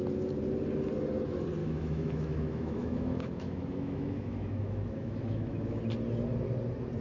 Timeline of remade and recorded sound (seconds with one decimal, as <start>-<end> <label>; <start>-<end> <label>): 0.0-1.6 recorded; 1.6-5.8 remade; 5.8-7.0 recorded